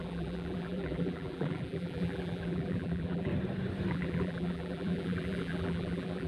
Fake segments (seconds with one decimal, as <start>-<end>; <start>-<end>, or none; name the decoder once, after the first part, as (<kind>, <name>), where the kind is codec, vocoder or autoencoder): 0.0-3.3 (vocoder, BigVGAN v2); 3.9-6.3